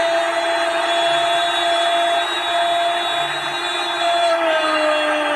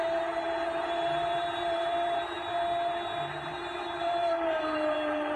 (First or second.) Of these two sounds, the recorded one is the first